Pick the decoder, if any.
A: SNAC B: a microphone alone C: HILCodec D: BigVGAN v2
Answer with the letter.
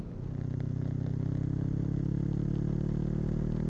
B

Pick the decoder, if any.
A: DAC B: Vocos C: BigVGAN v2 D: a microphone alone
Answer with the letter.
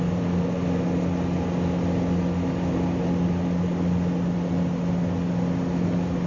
D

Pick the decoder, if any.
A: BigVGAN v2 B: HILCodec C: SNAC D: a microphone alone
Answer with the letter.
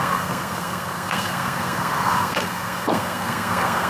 C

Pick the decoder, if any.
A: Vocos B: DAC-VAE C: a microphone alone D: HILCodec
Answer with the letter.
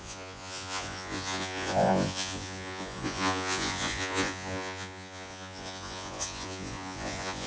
A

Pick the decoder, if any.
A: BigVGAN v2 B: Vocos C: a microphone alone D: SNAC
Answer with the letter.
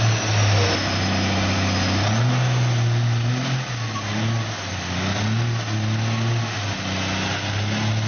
C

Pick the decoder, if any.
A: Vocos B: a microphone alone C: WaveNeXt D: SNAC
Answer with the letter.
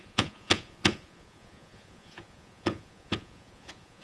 A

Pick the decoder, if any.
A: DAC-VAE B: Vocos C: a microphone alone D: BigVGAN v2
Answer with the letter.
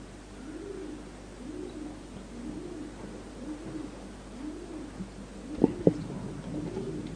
C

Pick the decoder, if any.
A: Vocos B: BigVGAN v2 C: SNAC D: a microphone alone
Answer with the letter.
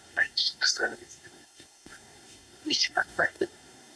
C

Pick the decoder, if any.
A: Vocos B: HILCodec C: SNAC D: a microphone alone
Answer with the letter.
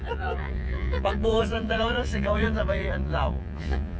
A